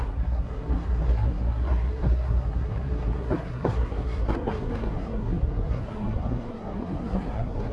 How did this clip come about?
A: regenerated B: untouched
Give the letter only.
A